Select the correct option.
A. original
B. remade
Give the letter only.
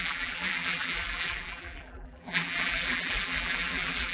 B